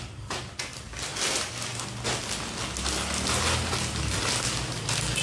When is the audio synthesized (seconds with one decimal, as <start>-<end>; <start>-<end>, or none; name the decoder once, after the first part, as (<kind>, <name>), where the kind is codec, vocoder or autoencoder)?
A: none